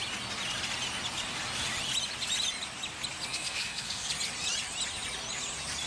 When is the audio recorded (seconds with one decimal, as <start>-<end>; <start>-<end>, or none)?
0.0-3.3; 4.1-5.9